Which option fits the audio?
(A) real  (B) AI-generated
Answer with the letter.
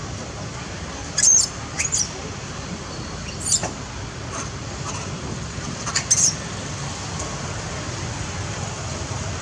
A